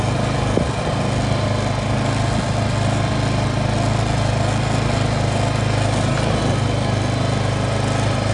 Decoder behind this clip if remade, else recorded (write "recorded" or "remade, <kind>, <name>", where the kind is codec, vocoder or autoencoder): recorded